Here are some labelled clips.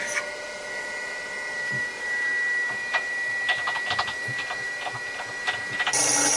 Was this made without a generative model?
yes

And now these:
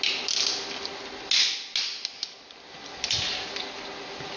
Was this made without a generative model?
yes